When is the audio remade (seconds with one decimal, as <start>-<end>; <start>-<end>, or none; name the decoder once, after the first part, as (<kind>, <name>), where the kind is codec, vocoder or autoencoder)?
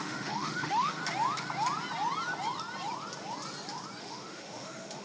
0.0-1.0 (autoencoder, DAC-VAE); 4.0-5.0